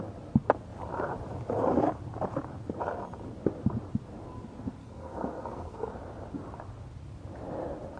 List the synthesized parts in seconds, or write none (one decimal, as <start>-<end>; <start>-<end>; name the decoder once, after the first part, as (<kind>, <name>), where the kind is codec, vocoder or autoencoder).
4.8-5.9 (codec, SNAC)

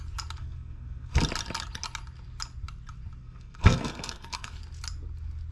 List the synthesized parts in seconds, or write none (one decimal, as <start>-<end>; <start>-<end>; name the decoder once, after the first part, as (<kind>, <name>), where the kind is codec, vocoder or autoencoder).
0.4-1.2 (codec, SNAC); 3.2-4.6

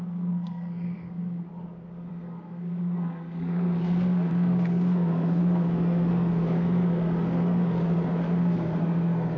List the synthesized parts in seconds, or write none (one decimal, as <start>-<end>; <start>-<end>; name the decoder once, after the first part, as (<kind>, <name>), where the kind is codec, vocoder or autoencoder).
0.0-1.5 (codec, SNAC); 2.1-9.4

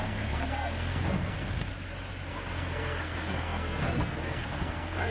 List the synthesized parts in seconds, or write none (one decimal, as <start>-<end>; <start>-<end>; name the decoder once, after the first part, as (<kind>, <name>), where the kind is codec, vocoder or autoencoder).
0.0-1.7 (codec, SNAC); 2.3-5.1

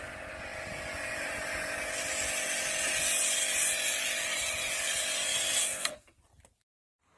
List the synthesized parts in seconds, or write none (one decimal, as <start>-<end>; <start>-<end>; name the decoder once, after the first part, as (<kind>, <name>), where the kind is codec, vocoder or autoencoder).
5.6-6.2 (codec, SNAC)